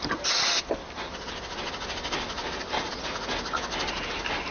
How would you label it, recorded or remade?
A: recorded